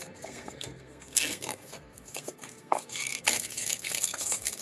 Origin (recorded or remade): remade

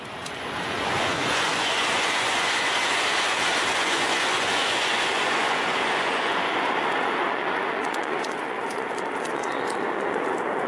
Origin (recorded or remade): remade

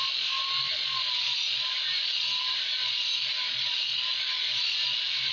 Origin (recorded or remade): recorded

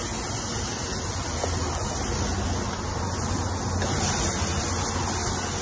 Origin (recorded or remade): recorded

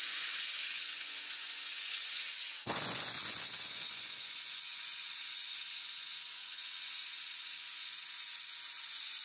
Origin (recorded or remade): remade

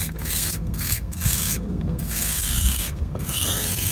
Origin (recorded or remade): remade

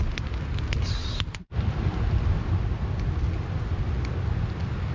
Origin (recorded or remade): recorded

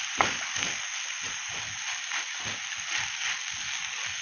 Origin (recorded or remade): recorded